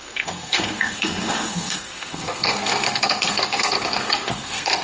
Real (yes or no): no